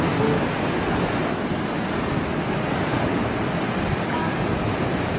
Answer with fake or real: real